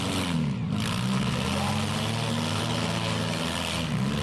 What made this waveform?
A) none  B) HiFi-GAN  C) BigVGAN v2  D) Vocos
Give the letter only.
A